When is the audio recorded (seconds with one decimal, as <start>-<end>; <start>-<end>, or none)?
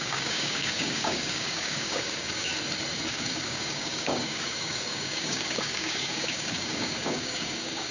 2.5-3.1